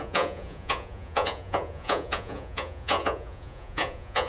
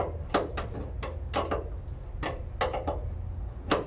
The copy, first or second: first